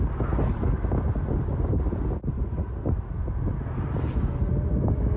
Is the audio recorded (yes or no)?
yes